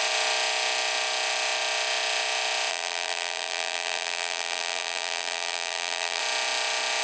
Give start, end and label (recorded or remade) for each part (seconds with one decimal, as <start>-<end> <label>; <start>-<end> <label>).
0.0-2.7 recorded; 2.7-6.2 remade; 6.2-7.0 recorded